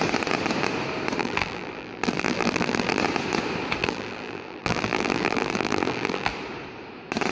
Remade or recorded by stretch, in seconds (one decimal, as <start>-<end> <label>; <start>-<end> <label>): 0.0-1.2 recorded; 1.2-3.0 remade; 3.0-3.8 recorded; 3.8-6.3 remade; 6.3-7.3 recorded